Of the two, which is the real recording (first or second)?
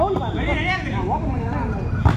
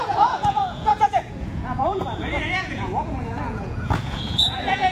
first